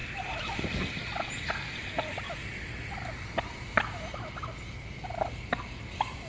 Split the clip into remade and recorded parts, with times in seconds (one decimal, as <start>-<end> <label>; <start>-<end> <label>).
0.0-6.3 recorded